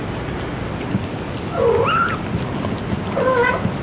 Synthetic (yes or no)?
no